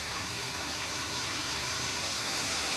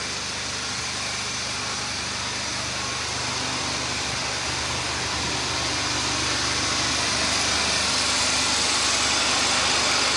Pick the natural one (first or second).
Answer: second